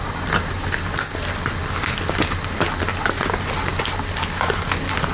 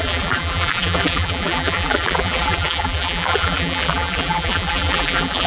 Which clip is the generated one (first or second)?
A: second